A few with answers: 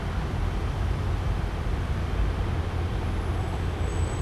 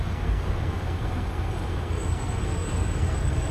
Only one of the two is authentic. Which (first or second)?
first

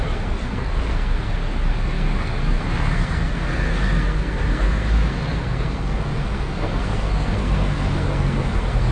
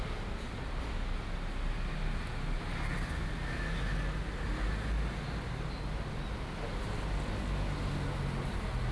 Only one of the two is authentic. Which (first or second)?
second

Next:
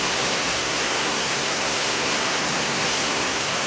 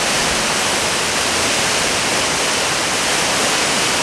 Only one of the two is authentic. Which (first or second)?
second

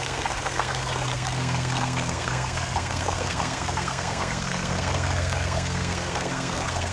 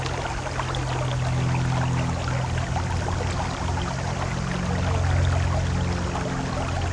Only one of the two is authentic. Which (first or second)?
second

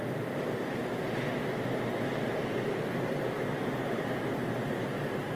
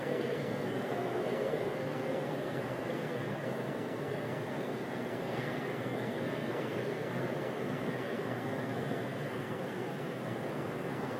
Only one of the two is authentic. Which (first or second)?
first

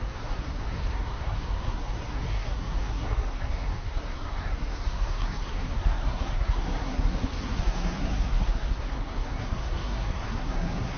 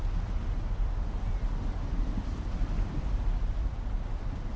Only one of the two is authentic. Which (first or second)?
second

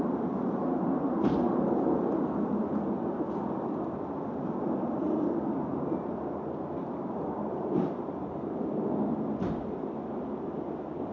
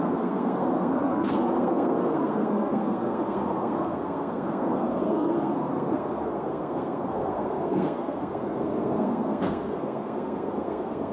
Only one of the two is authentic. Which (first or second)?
first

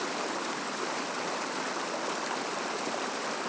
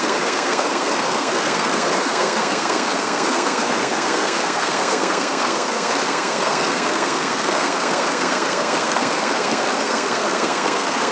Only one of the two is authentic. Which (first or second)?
first